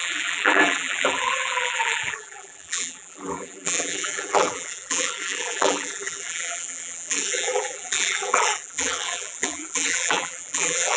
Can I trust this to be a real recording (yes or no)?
no